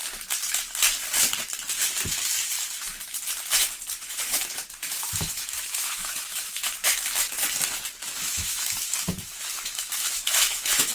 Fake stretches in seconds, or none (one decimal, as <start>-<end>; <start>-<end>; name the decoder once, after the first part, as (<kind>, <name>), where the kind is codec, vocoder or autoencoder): 4.0-6.9 (autoencoder, DAC-VAE); 7.9-10.9